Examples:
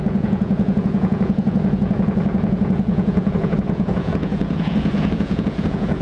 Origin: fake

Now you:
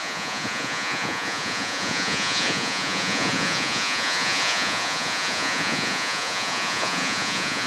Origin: fake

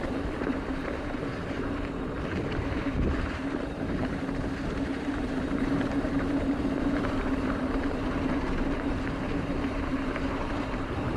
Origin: fake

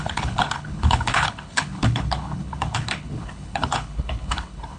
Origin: fake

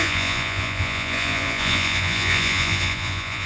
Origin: fake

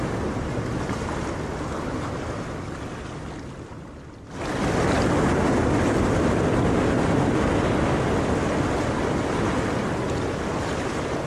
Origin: real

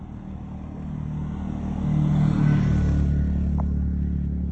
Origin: real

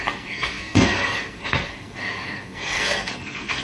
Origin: fake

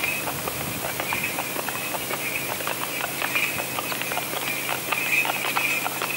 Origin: real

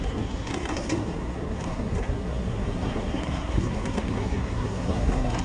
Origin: fake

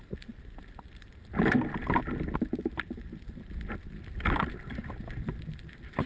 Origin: real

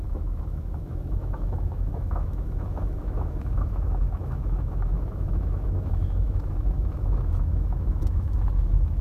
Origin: fake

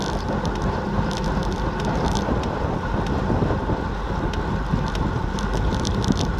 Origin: real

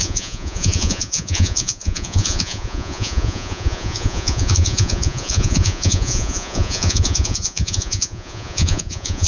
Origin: fake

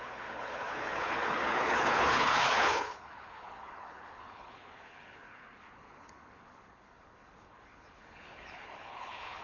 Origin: fake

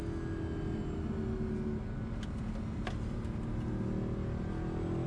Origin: real